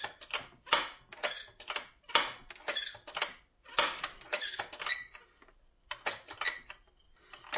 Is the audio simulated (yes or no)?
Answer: no